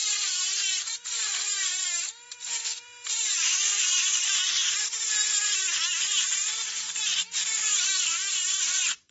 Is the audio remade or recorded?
remade